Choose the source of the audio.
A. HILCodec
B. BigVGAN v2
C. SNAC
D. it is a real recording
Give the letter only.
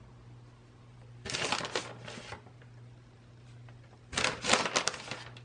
D